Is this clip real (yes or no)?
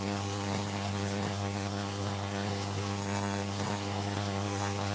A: no